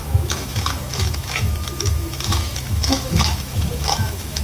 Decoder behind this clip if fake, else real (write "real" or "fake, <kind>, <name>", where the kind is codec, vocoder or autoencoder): fake, autoencoder, DAC-VAE